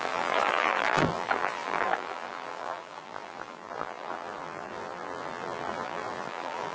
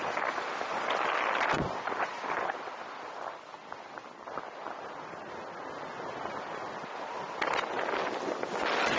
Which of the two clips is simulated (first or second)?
first